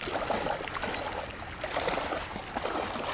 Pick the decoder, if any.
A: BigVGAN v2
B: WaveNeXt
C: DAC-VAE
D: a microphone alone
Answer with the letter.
D